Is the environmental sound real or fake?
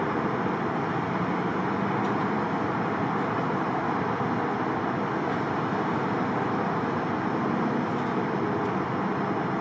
real